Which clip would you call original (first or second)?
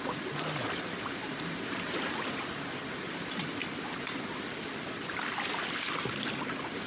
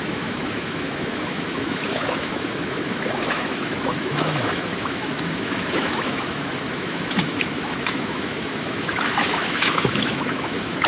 first